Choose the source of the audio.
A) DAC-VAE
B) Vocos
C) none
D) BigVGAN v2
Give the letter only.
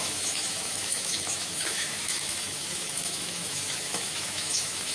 A